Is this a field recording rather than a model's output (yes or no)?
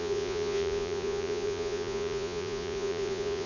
no